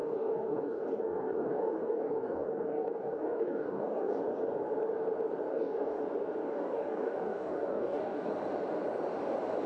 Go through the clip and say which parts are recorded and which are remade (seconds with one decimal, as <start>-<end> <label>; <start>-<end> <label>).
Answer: 0.0-4.2 remade; 4.2-5.5 recorded; 5.5-6.0 remade; 6.0-6.4 recorded; 6.4-8.3 remade; 8.3-9.7 recorded